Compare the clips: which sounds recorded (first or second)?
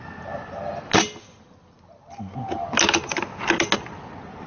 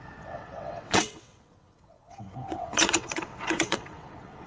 first